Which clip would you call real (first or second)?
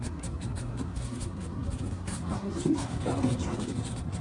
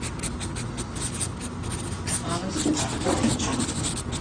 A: second